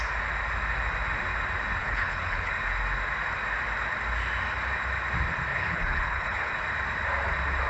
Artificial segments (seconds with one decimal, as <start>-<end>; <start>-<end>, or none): 1.8-2.5; 5.5-6.5